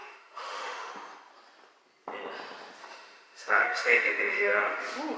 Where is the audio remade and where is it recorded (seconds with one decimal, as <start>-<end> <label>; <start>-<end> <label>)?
0.0-0.9 remade; 0.9-2.8 recorded; 2.8-4.8 remade; 4.8-5.2 recorded